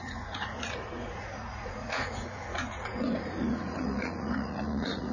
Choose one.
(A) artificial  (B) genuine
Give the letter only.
A